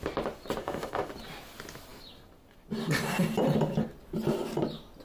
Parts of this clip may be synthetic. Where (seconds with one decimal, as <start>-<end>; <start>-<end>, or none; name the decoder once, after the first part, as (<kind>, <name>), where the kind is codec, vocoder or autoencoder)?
0.6-1.1 (autoencoder, DAC-VAE)